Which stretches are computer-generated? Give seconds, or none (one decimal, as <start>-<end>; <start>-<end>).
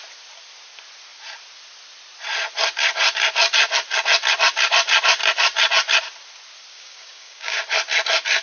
6.7-7.6